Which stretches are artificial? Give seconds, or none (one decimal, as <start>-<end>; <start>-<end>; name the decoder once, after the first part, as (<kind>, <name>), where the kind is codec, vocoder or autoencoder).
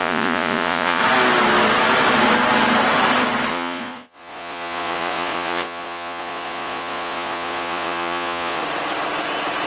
0.0-1.0 (vocoder, Vocos); 3.5-8.6